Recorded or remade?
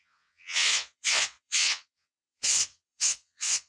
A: remade